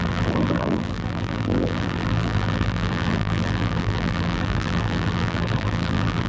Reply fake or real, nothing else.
fake